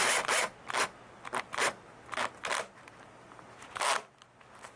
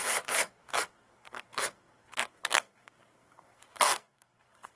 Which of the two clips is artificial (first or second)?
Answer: second